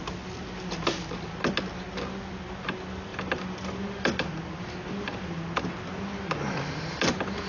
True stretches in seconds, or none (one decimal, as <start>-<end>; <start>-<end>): 0.0-7.5